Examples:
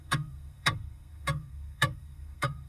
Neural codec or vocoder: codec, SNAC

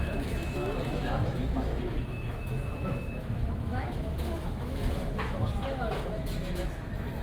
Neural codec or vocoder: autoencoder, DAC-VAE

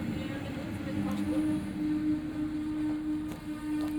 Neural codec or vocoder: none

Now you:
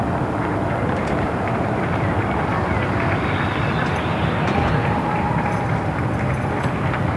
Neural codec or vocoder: none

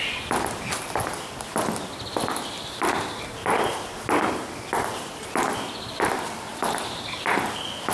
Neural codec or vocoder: none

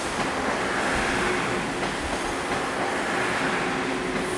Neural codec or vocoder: none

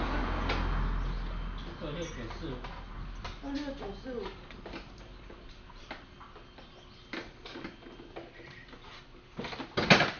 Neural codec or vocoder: none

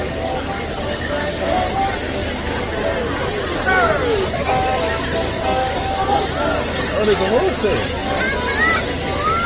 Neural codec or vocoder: none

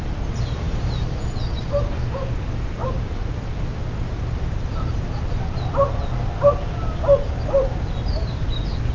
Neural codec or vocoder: none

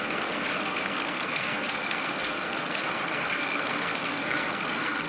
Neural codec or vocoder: codec, SNAC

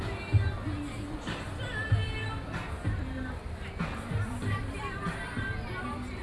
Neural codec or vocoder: none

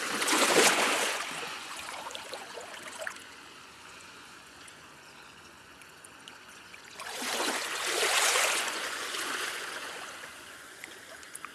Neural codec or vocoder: vocoder, Vocos